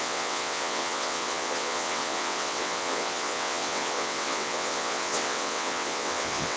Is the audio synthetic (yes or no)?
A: yes